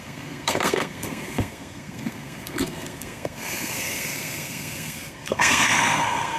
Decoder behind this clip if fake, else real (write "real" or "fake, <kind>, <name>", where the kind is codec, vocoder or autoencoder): fake, codec, SNAC